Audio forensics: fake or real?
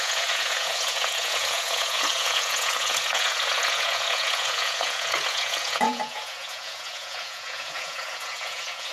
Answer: fake